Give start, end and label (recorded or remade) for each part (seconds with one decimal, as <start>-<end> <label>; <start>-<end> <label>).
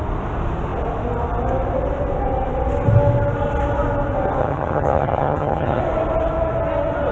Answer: 0.0-4.4 recorded; 4.4-5.8 remade; 5.8-7.1 recorded